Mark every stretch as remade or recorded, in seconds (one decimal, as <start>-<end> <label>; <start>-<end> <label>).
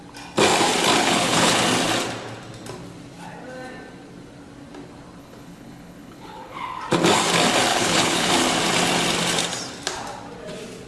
0.0-1.0 recorded; 1.0-1.6 remade; 1.6-5.2 recorded; 5.2-6.8 remade; 6.8-7.7 recorded; 7.7-8.3 remade; 8.3-10.9 recorded